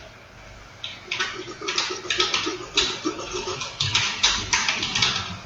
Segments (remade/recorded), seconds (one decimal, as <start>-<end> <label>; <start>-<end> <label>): 0.0-3.2 recorded; 3.2-4.6 remade; 4.6-5.5 recorded